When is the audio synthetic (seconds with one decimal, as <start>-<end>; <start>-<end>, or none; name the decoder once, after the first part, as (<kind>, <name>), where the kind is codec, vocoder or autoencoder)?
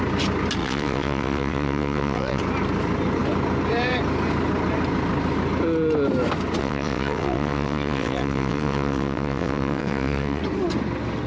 0.6-2.4 (vocoder, WaveNeXt); 6.6-10.4